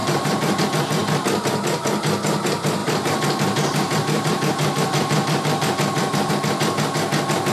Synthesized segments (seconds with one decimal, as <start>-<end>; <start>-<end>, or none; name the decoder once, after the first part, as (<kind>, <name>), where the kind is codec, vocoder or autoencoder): 0.0-0.6 (vocoder, BigVGAN v2); 2.8-6.3

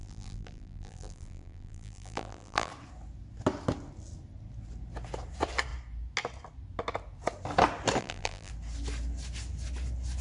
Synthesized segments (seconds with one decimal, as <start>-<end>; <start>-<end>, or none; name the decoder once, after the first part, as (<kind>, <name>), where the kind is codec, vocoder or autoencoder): 0.0-2.7 (vocoder, BigVGAN v2); 8.0-8.5

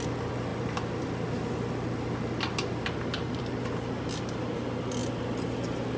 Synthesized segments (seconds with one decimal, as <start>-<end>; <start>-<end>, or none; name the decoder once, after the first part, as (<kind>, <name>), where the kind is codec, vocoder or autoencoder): none

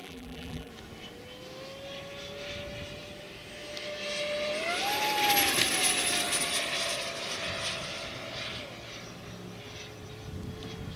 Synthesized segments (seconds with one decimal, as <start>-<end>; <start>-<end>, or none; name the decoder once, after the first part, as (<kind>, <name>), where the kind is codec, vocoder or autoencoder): 0.0-0.7 (vocoder, BigVGAN v2)

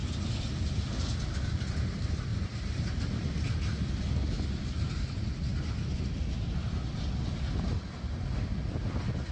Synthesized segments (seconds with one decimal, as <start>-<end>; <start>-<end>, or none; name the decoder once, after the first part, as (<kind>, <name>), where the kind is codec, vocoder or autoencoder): 0.0-1.5 (vocoder, BigVGAN v2); 2.3-3.5

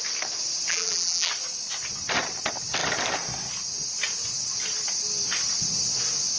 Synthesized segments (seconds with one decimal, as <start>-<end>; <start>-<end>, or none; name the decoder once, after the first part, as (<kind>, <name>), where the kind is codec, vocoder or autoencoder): 0.7-1.3 (vocoder, BigVGAN v2)

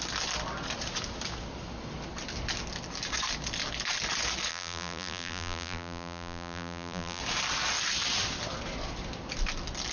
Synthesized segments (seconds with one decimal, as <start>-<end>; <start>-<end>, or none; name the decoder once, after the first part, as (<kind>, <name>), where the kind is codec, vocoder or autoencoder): 4.5-7.2 (vocoder, BigVGAN v2)

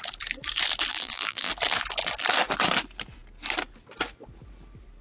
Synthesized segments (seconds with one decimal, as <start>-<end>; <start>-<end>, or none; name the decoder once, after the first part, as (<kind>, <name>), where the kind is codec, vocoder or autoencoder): 0.9-1.5 (vocoder, BigVGAN v2)